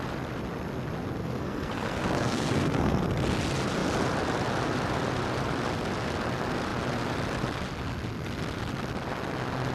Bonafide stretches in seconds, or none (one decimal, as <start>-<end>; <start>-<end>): 0.0-1.2; 3.0-9.7